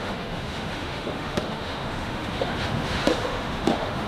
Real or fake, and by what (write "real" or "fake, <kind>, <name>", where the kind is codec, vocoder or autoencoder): fake, autoencoder, DAC-VAE